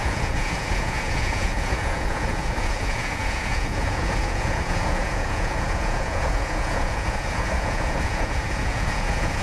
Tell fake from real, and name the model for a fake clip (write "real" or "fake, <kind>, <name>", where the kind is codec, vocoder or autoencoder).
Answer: fake, vocoder, Vocos